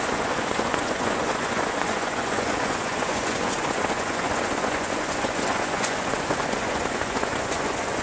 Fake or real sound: fake